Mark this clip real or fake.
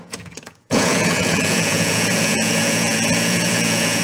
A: fake